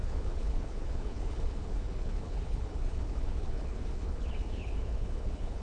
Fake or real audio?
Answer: fake